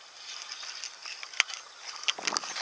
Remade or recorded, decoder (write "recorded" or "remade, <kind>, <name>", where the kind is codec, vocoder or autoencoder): recorded